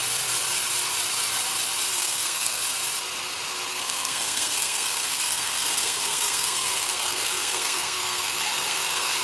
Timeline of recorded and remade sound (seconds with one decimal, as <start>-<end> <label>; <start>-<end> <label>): 0.0-1.9 recorded; 1.9-2.6 remade; 2.6-3.7 recorded; 3.7-9.2 remade